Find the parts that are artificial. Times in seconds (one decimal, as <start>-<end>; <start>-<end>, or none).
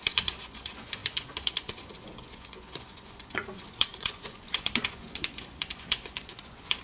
0.0-6.8